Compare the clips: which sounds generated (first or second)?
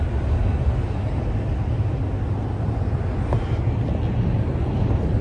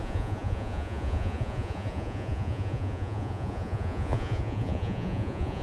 second